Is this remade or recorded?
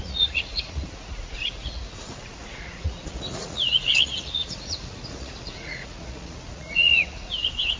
remade